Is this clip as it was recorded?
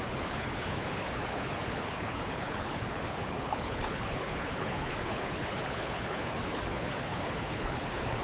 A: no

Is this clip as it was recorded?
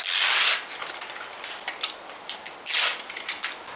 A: yes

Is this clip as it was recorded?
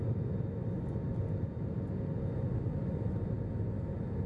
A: yes